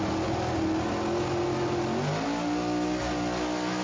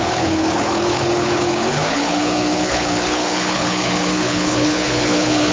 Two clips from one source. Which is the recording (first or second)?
first